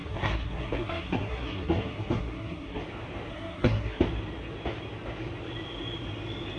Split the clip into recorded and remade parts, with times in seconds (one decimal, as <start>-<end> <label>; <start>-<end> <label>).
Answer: 0.0-2.8 remade; 2.8-3.3 recorded; 3.3-4.0 remade; 4.0-6.6 recorded